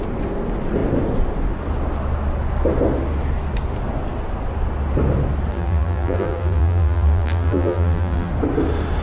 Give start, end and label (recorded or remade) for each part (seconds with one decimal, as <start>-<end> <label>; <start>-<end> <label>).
0.0-5.5 recorded; 5.5-8.3 remade; 8.3-9.0 recorded